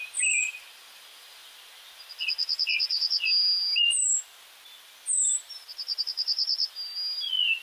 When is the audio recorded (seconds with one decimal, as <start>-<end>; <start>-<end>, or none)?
0.0-7.6